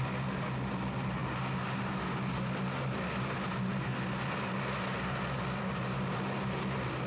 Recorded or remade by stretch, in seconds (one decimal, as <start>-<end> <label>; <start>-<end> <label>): 0.0-7.1 recorded